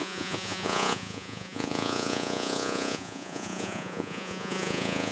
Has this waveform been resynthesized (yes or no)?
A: yes